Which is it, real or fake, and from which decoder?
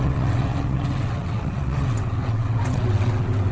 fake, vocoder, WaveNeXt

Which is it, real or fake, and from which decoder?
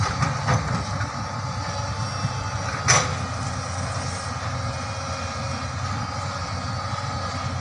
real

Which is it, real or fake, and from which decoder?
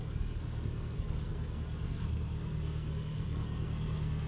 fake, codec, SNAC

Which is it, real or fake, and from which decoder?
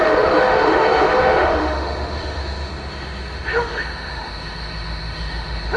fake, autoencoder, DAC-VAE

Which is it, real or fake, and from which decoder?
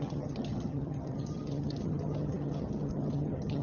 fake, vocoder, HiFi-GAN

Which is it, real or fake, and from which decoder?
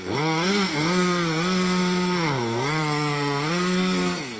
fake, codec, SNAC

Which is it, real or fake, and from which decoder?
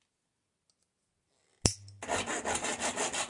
real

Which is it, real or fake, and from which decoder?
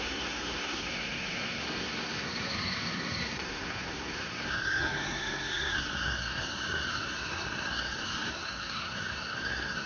fake, codec, SNAC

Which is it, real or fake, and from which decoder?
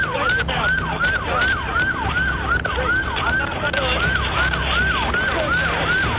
real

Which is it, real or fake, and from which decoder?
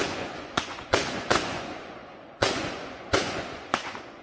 fake, vocoder, Vocos